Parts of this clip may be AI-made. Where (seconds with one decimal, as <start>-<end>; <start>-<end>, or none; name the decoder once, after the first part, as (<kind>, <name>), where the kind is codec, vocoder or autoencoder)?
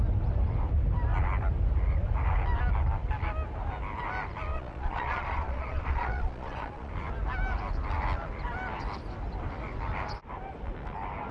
4.5-6.9 (vocoder, Vocos)